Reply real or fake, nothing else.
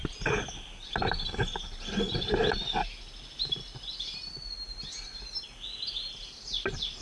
real